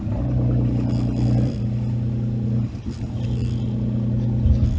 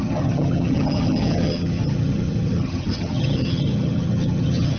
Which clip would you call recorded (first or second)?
first